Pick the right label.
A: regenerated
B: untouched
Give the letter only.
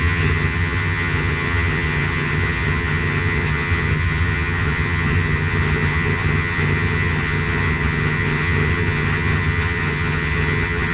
A